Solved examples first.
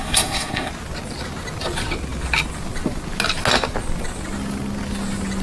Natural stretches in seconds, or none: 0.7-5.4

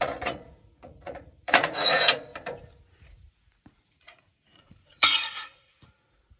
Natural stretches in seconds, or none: 2.3-2.9

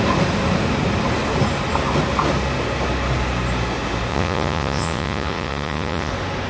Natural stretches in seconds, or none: 0.0-4.1; 6.1-6.5